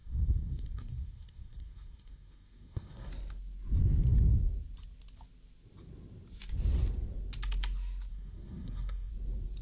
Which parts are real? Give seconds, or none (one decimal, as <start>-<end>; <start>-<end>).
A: 3.1-8.1; 9.1-9.6